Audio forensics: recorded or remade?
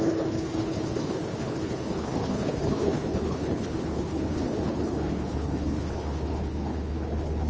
remade